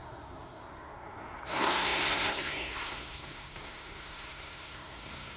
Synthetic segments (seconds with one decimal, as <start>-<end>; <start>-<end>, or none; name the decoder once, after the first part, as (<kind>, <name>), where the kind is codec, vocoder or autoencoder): 0.0-5.4 (codec, SNAC)